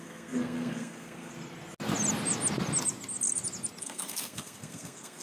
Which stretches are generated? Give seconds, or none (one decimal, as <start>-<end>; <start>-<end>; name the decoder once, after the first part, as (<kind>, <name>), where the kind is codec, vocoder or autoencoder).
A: 0.0-1.3 (codec, SNAC); 3.8-5.2